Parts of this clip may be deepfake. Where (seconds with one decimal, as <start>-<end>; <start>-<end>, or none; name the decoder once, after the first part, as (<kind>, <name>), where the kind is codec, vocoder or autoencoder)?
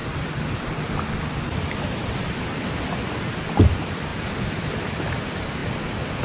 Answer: none